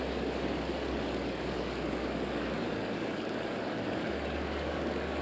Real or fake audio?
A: fake